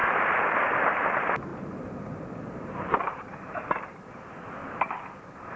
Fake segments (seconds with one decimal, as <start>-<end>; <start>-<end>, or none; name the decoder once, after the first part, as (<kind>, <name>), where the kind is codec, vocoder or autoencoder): 0.0-1.0 (vocoder, BigVGAN v2); 1.5-4.1; 4.6-5.6